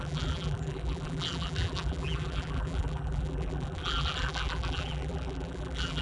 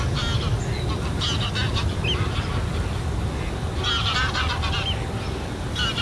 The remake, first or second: first